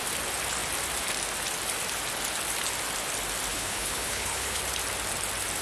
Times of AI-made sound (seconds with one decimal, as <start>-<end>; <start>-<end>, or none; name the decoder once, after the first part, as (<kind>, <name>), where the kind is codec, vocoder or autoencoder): 3.5-4.6 (codec, HILCodec)